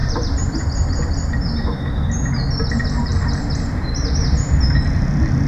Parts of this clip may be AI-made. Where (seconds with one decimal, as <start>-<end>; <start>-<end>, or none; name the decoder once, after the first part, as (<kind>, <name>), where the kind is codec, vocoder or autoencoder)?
0.0-0.6 (vocoder, BigVGAN v2); 3.1-4.6